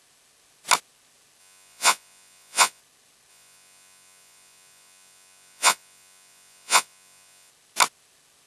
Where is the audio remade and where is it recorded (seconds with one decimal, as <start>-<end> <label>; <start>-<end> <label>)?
0.0-1.4 recorded; 1.4-2.8 remade; 2.8-3.3 recorded; 3.3-7.5 remade; 7.5-8.5 recorded